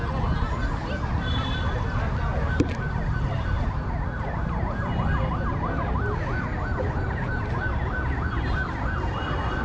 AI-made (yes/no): no